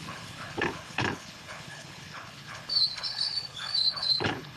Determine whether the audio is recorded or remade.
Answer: remade